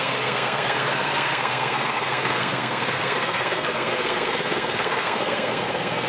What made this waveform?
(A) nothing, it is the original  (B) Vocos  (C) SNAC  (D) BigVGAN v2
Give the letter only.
C